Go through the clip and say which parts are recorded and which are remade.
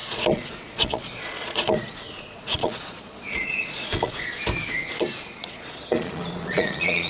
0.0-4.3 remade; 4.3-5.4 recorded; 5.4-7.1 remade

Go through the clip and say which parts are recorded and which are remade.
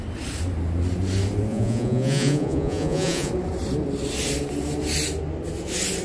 0.0-1.5 recorded; 1.5-3.3 remade; 3.3-6.0 recorded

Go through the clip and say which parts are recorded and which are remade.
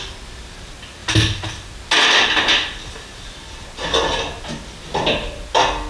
0.0-5.9 recorded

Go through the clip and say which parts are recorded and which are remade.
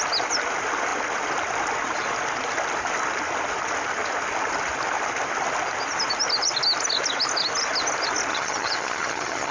0.0-8.3 recorded; 8.3-9.5 remade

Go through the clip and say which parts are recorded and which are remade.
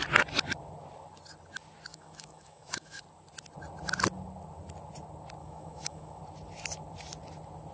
0.0-1.9 recorded; 1.9-3.0 remade; 3.0-5.4 recorded; 5.4-6.2 remade; 6.2-7.7 recorded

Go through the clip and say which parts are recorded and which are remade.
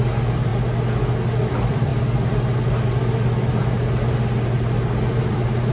0.0-0.5 remade; 0.5-1.5 recorded; 1.5-1.9 remade; 1.9-5.3 recorded; 5.3-5.7 remade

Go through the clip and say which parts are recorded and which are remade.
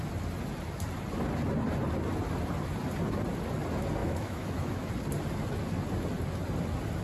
0.0-4.0 recorded; 4.0-4.9 remade; 4.9-7.0 recorded